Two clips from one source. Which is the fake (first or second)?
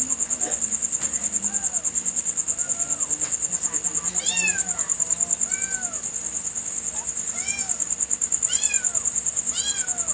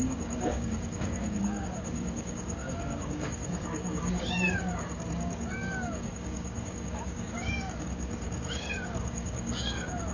second